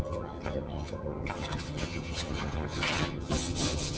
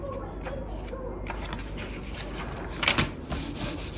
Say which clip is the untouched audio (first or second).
second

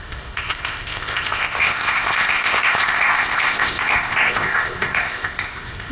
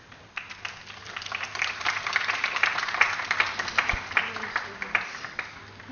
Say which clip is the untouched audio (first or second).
second